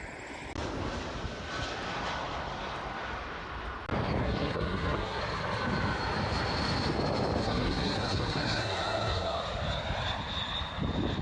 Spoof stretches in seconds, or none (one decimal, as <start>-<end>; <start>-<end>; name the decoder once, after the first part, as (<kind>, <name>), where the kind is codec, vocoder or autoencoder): 4.2-5.2 (codec, SNAC); 7.4-9.4